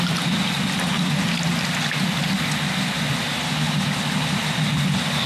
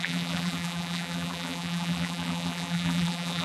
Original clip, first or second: first